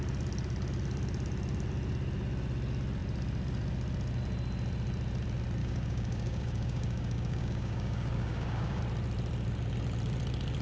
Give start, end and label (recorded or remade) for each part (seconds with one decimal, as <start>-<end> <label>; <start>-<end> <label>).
0.0-5.6 recorded; 5.6-8.8 remade; 8.8-10.6 recorded